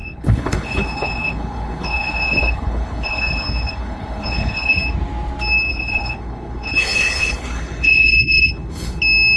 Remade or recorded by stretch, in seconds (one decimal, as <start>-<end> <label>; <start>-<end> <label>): 0.0-4.8 remade; 4.8-5.7 recorded; 5.7-9.0 remade; 9.0-9.4 recorded